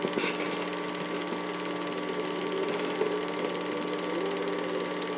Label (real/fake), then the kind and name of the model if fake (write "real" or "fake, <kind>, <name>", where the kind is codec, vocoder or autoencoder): real